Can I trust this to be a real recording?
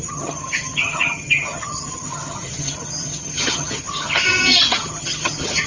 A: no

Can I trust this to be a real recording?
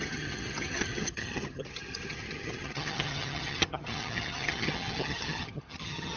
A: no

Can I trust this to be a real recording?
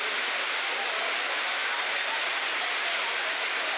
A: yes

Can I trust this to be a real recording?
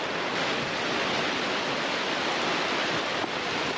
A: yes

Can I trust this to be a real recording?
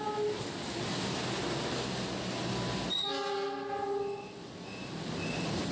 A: yes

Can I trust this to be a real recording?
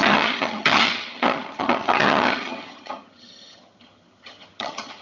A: no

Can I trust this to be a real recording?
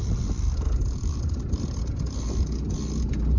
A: yes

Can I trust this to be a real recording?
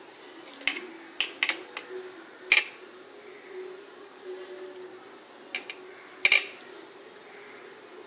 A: yes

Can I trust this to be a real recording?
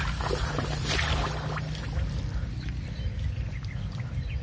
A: yes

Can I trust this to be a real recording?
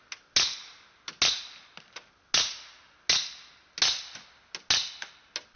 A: yes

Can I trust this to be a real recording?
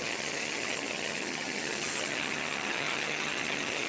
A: no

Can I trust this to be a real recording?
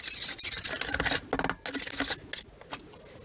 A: yes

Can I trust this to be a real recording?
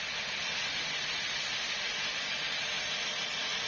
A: yes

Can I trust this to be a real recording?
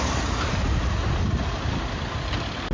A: yes